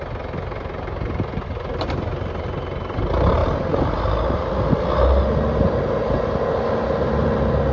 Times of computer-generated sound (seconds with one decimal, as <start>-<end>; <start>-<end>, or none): 3.4-4.5